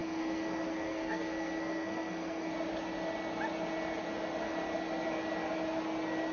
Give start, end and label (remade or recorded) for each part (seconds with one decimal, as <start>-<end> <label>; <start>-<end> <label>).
0.0-2.5 remade; 2.5-6.3 recorded